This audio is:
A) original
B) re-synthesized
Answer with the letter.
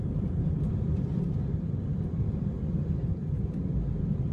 A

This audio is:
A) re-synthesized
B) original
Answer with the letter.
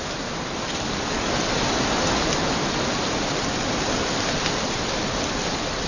B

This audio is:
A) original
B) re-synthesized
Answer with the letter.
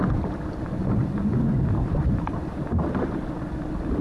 A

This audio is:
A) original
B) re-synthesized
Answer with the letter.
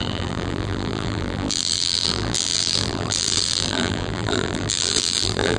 B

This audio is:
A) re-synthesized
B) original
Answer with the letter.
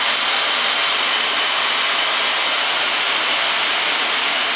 B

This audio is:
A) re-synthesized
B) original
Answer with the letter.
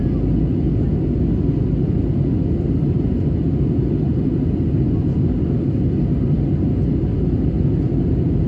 B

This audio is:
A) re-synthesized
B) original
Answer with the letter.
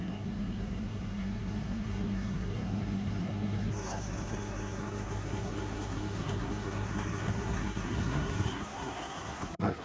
A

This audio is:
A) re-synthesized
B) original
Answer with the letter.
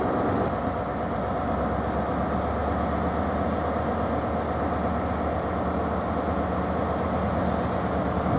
B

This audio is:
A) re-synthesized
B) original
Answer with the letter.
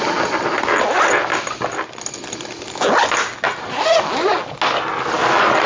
B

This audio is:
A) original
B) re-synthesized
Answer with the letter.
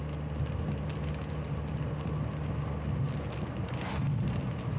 A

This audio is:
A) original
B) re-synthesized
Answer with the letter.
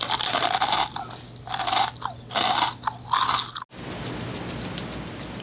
A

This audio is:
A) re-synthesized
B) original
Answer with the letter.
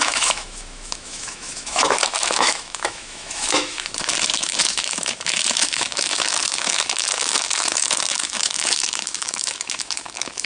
A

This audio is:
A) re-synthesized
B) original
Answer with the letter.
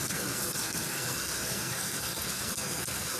A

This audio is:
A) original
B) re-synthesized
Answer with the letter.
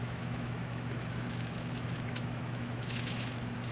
B